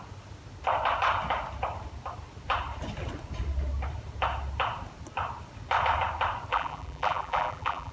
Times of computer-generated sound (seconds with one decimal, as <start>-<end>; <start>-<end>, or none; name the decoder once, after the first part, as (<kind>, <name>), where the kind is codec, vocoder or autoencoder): 6.5-7.9 (vocoder, BigVGAN v2)